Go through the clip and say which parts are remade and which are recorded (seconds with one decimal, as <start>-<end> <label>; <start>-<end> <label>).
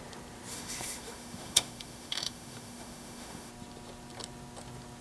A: 0.0-0.5 recorded; 0.5-3.5 remade; 3.5-5.0 recorded